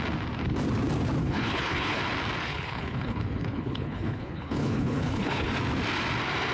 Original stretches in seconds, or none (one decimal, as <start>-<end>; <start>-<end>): 0.0-1.2; 2.0-2.4; 5.5-6.5